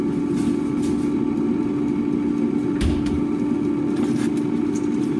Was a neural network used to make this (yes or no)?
no